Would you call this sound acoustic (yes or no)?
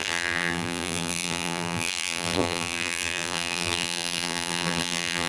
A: no